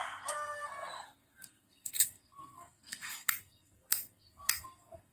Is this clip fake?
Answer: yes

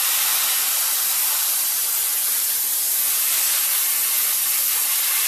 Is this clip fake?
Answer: no